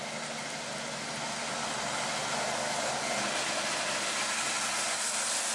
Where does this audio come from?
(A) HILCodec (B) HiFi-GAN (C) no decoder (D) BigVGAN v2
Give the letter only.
C